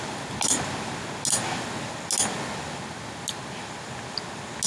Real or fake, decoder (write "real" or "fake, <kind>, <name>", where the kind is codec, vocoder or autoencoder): real